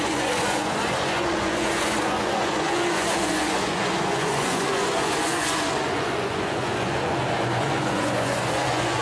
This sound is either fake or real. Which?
fake